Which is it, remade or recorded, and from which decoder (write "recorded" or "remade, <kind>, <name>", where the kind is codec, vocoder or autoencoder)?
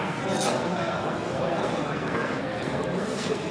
remade, codec, SNAC